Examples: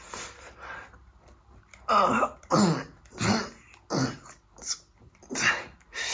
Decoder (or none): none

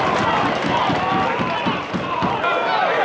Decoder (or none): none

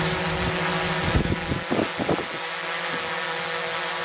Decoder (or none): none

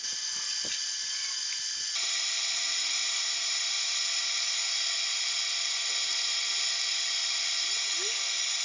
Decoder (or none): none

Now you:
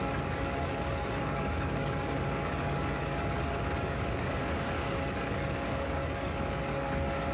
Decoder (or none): codec, DAC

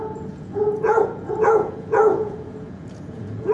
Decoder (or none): vocoder, Vocos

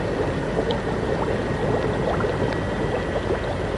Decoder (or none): none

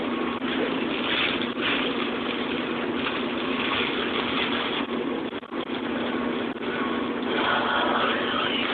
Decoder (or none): none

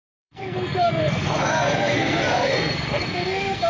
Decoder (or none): codec, SNAC